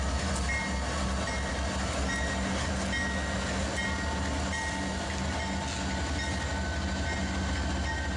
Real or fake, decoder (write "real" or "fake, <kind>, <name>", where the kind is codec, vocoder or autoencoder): real